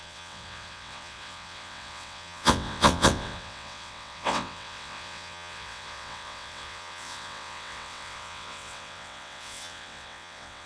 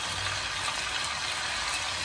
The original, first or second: second